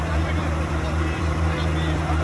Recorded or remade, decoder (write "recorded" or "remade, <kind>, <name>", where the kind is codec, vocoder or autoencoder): remade, vocoder, BigVGAN v2